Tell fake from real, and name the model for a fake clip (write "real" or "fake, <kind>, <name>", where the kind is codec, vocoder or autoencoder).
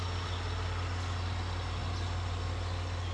real